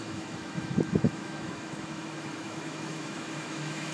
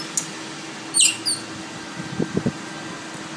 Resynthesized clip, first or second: first